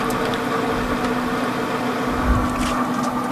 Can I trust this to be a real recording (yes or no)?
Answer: yes